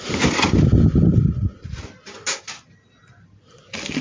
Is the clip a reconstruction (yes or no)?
no